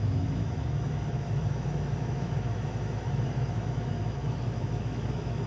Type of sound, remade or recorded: remade